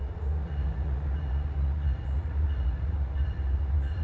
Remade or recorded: remade